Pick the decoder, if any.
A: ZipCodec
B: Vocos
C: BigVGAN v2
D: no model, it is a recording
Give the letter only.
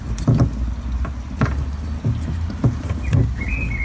D